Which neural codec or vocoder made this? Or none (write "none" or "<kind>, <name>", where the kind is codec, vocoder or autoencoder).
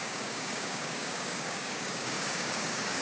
codec, DAC